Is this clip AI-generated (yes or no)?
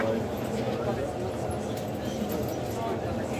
no